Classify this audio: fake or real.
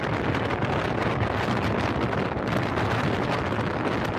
real